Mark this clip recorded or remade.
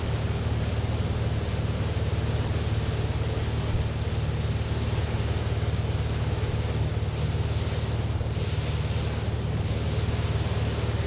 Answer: recorded